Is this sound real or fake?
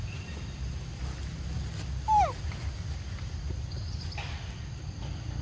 real